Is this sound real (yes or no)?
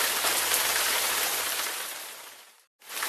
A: no